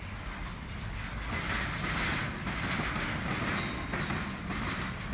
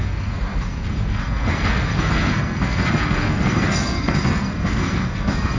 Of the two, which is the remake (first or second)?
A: second